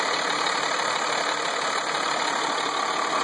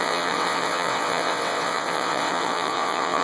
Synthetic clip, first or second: second